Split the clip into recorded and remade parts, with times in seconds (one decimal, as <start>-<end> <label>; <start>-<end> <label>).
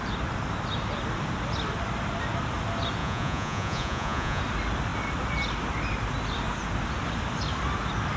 0.0-3.0 recorded; 3.0-4.4 remade; 4.4-8.2 recorded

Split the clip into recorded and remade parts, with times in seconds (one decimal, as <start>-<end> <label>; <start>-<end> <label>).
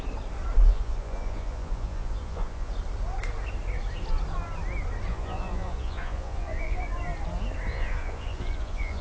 0.0-0.7 recorded; 0.7-2.7 remade; 2.7-5.1 recorded; 5.1-6.9 remade; 6.9-7.7 recorded; 7.7-9.0 remade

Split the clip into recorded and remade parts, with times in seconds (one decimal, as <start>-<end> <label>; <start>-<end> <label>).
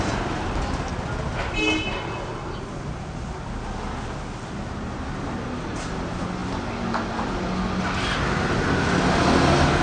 0.0-9.8 recorded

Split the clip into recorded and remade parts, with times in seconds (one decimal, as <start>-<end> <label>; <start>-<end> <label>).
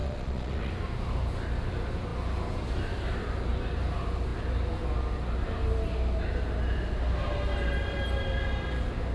0.0-0.7 remade; 0.7-9.1 recorded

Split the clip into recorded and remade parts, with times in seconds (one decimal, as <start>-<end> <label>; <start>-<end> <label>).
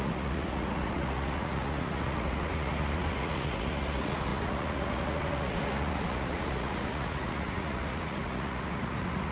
0.0-9.3 remade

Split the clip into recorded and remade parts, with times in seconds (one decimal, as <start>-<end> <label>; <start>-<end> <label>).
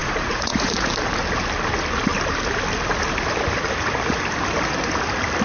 0.0-0.9 remade; 0.9-5.4 recorded